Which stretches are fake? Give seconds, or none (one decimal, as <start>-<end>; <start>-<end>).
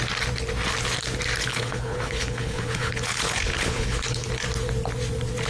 1.5-4.3